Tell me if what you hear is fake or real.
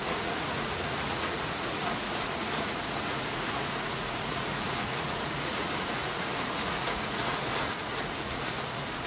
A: fake